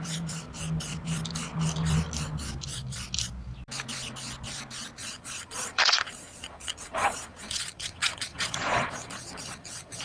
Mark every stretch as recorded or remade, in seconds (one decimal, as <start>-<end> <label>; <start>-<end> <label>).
0.0-5.0 recorded; 5.0-10.0 remade